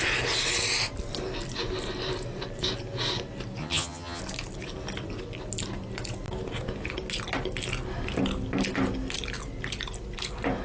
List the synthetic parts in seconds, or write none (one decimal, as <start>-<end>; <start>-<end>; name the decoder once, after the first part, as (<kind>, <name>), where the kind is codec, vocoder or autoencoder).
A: 3.6-4.2 (vocoder, HiFi-GAN)